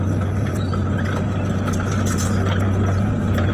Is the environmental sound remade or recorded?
recorded